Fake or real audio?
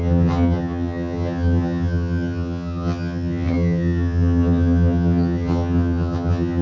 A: fake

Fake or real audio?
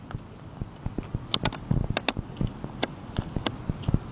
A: real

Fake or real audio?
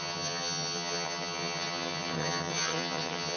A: fake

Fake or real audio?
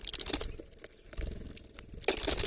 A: real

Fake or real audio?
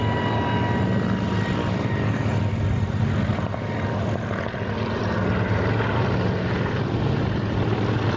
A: real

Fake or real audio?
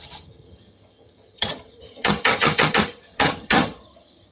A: fake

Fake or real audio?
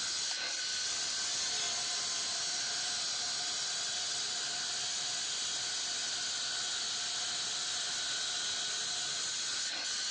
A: real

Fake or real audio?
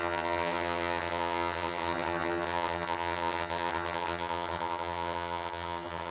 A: fake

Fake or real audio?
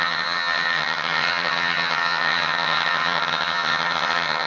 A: fake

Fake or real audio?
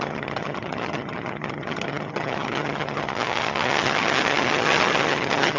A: fake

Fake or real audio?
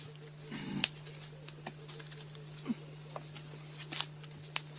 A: real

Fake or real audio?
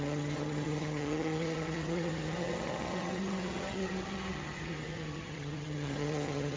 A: fake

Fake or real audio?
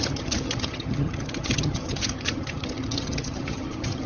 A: fake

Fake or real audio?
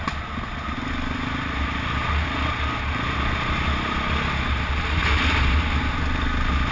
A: real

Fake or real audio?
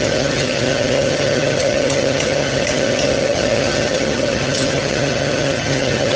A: fake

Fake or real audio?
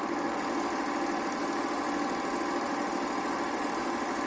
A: real